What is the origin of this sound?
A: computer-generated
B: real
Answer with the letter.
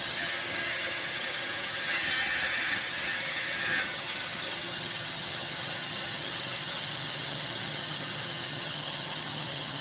A